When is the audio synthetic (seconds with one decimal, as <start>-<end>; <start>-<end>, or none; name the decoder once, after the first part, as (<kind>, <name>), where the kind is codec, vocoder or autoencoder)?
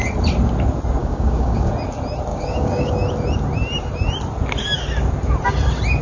1.0-1.7 (codec, DAC); 2.3-2.9